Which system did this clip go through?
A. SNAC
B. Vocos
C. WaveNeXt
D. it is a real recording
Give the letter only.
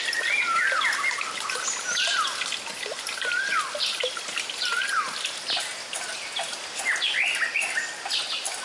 D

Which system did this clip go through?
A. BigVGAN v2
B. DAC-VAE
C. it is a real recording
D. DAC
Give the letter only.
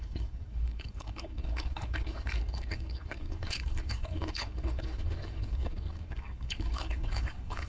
D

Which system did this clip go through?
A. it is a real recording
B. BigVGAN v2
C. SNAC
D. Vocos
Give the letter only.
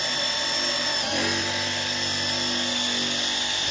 A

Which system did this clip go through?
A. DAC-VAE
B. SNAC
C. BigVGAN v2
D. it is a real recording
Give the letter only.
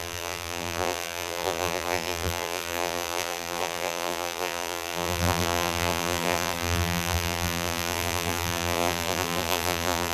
C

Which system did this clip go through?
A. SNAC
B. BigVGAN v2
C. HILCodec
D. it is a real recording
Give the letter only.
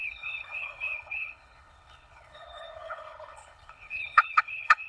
C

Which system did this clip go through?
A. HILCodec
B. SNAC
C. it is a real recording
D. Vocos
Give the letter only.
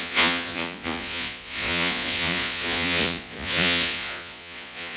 D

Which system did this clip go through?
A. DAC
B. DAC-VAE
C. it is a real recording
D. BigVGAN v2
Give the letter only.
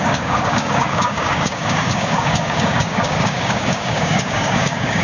A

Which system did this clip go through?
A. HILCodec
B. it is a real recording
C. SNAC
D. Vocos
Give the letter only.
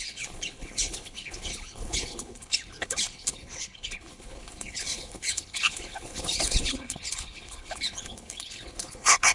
A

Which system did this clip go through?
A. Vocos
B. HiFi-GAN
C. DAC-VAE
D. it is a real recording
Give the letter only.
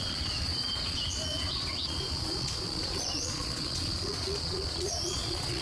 A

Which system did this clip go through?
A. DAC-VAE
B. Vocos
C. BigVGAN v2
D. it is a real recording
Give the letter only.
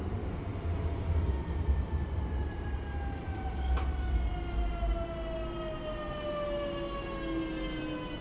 D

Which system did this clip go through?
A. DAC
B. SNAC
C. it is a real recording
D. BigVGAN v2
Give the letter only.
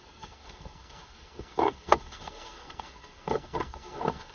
B